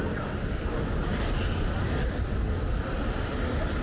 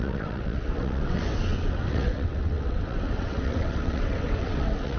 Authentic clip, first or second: first